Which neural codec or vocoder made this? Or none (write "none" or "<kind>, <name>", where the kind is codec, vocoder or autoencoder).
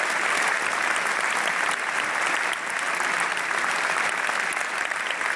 none